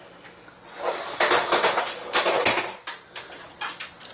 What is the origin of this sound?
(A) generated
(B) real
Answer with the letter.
B